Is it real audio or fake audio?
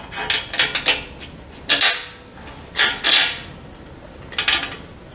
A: real